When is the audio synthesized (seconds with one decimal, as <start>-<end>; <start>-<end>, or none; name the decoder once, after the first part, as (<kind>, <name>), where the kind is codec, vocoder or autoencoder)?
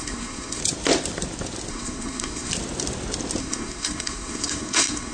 0.0-0.6 (codec, SNAC); 1.7-2.5; 3.4-5.1